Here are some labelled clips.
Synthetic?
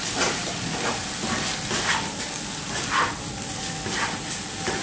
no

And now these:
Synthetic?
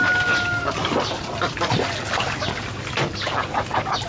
no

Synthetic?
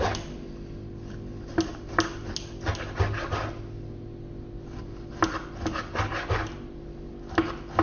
no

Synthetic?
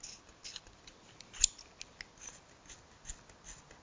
no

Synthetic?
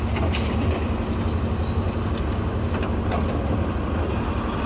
no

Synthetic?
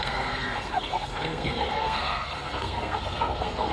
yes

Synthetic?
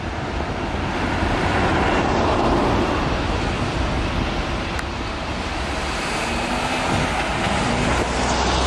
no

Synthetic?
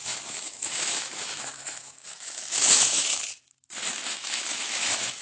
yes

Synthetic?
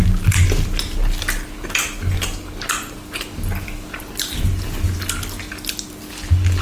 no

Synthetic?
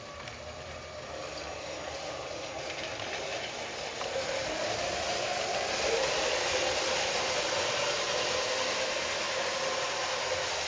no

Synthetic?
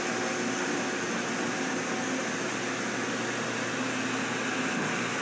no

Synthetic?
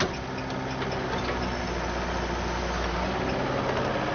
no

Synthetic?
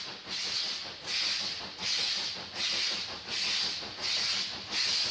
no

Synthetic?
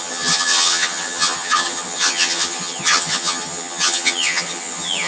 yes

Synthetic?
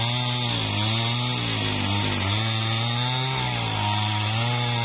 no